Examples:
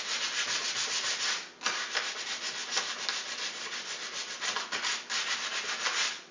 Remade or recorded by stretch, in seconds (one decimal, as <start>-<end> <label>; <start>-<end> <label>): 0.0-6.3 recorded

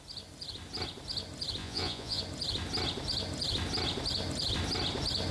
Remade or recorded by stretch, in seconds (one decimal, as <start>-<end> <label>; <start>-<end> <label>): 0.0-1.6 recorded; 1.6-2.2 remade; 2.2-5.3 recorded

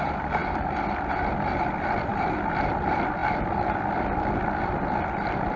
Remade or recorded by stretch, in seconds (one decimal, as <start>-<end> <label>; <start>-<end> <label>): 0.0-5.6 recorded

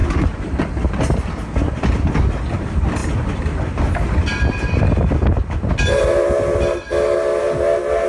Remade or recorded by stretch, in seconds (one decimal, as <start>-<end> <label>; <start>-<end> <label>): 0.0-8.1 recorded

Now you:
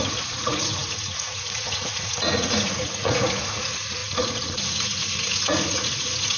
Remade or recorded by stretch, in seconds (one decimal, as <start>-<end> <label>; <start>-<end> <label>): 0.0-6.4 remade

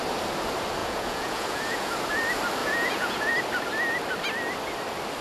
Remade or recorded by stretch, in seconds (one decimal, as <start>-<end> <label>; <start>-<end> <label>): 0.0-0.8 recorded; 0.8-1.9 remade; 1.9-2.6 recorded; 2.6-3.3 remade; 3.3-5.2 recorded

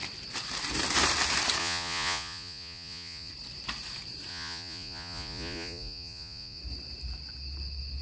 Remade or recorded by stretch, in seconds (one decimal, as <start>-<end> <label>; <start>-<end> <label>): 0.0-1.6 recorded; 1.6-3.3 remade; 3.3-4.3 recorded; 4.3-6.6 remade; 6.6-8.0 recorded

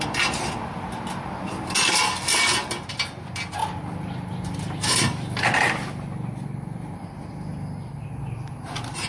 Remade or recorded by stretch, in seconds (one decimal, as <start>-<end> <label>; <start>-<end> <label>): 0.0-9.1 recorded